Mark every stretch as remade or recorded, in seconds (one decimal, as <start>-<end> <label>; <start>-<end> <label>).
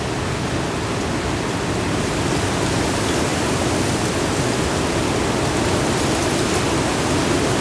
0.0-7.6 recorded